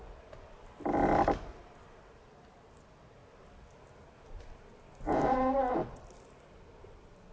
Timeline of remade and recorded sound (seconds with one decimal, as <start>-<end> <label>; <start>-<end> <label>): 0.0-7.3 recorded